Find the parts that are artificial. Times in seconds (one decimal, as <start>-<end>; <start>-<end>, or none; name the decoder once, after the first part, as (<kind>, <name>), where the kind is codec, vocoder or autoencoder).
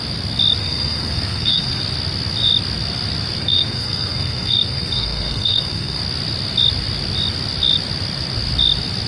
0.6-1.8 (codec, SNAC); 3.4-6.0